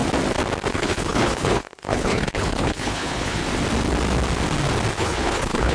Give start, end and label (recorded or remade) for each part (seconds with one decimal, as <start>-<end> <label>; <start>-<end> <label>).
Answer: 0.0-0.7 recorded; 0.7-3.4 remade; 3.4-5.0 recorded; 5.0-5.7 remade

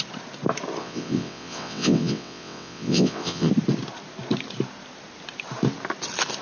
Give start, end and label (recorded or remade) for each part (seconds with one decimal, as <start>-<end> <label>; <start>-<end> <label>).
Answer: 0.0-0.8 recorded; 0.8-3.5 remade; 3.5-6.4 recorded

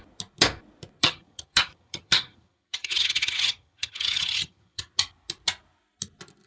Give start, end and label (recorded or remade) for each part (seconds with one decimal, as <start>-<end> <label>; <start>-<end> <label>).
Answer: 0.0-1.0 recorded; 1.0-4.9 remade; 4.9-6.5 recorded